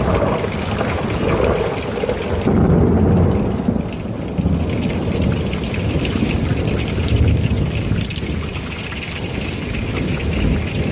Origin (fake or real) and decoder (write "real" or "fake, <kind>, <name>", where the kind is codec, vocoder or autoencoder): real